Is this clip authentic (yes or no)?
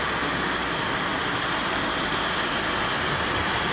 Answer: yes